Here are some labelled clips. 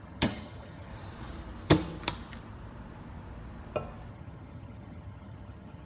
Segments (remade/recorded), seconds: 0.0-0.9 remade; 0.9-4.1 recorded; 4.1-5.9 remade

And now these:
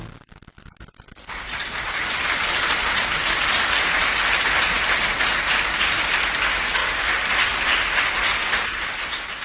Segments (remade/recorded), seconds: 0.0-4.0 recorded; 4.0-6.1 remade; 6.1-9.4 recorded

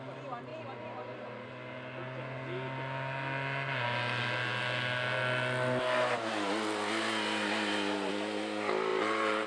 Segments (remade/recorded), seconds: 0.0-0.5 recorded; 0.5-1.5 remade; 1.5-8.9 recorded; 8.9-9.5 remade

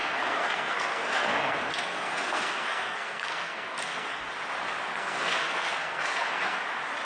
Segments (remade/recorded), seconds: 0.0-4.2 remade; 4.2-4.9 recorded; 4.9-6.6 remade; 6.6-7.0 recorded

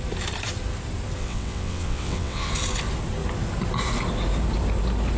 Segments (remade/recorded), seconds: 0.0-1.2 recorded; 1.2-2.5 remade; 2.5-5.2 recorded

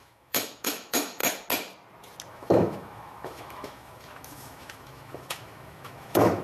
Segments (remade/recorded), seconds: 0.0-1.2 remade; 1.2-2.3 recorded; 2.3-6.4 remade